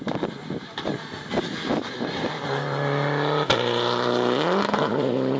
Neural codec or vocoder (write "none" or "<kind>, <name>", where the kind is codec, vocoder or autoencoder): none